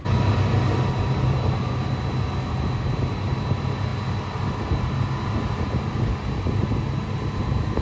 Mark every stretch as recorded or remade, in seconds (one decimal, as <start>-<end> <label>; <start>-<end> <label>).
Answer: 0.0-7.8 recorded